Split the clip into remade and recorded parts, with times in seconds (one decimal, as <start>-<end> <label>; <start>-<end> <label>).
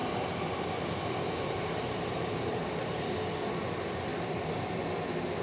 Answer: 0.0-3.1 remade; 3.1-4.1 recorded; 4.1-4.8 remade; 4.8-5.4 recorded